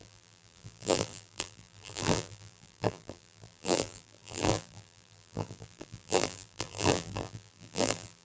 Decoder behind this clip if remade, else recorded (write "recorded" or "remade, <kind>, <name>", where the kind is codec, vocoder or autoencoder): remade, vocoder, BigVGAN v2